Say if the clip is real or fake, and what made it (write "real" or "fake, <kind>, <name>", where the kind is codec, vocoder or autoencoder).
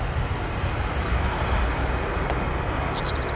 real